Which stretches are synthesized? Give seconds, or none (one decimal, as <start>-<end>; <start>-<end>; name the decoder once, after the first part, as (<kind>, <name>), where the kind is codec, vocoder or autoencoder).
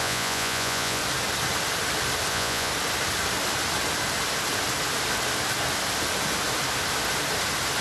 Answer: 0.0-1.0 (vocoder, Vocos); 2.3-2.7